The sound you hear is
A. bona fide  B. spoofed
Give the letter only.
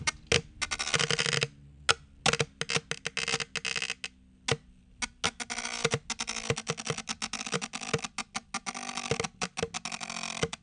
A